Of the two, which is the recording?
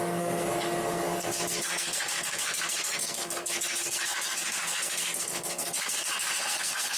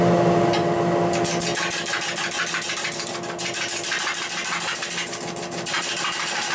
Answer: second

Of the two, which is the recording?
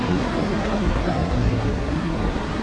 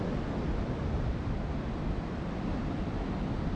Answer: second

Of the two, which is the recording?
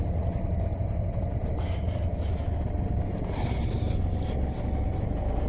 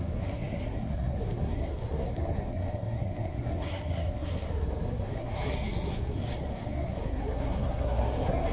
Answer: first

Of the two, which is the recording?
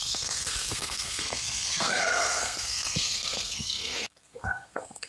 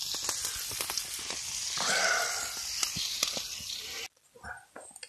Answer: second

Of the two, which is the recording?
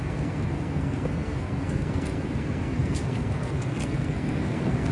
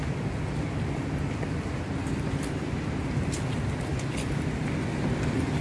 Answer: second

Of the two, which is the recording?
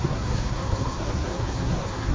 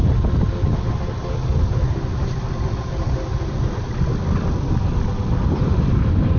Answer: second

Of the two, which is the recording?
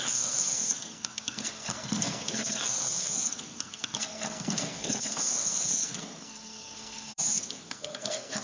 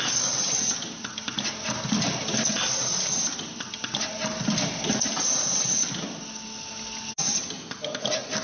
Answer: second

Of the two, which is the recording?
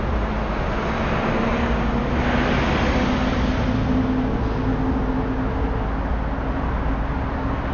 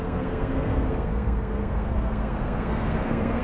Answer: first